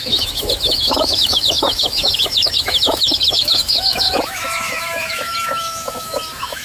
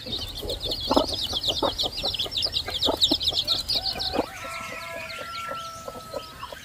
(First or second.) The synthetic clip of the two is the first